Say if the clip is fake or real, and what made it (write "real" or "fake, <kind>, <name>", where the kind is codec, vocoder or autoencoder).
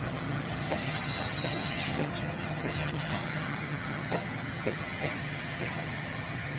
fake, vocoder, HiFi-GAN